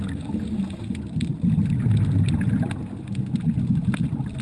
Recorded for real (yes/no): yes